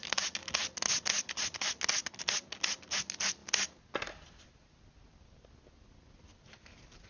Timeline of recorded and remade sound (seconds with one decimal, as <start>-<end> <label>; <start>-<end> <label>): 0.0-7.1 recorded